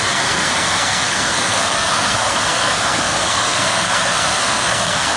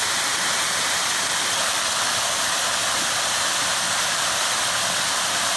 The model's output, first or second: first